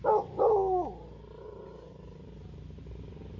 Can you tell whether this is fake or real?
real